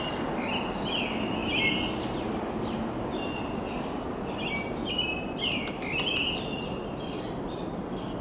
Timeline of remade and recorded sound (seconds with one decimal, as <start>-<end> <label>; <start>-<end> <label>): 0.0-8.2 recorded